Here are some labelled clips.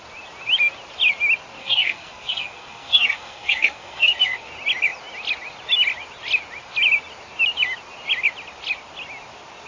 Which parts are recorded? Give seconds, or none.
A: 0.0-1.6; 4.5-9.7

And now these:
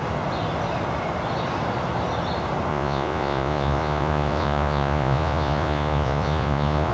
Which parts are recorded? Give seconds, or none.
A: 0.0-2.7

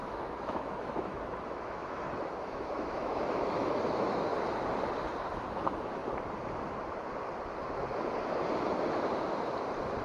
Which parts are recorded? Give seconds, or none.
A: 4.3-5.5; 6.0-10.0

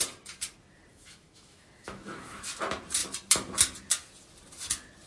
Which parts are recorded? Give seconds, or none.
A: 0.0-0.9; 2.5-5.1

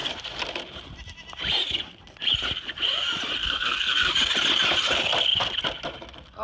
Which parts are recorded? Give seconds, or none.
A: 0.0-3.4; 4.1-6.4